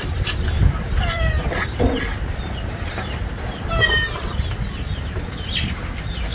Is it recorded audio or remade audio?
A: remade